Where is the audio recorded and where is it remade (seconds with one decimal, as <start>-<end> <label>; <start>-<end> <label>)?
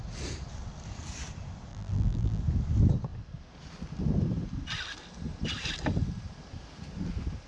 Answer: 0.0-1.7 recorded; 1.7-2.4 remade; 2.4-7.5 recorded